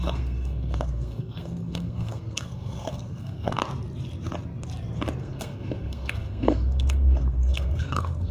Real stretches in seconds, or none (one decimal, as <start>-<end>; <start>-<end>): 3.6-5.2